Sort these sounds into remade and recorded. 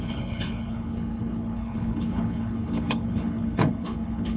remade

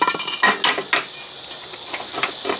recorded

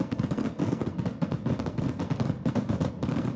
remade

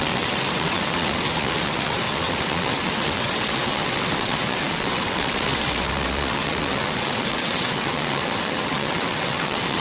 remade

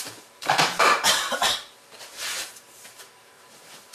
remade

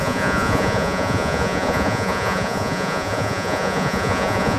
remade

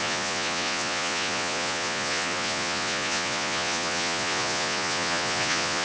remade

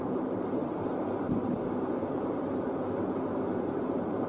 remade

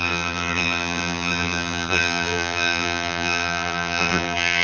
remade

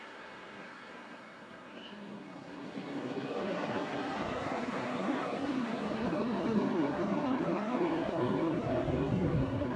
remade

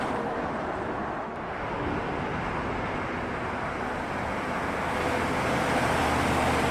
recorded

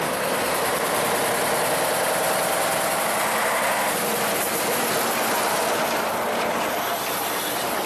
recorded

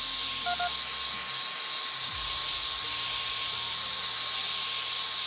recorded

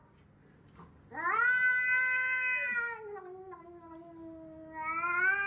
recorded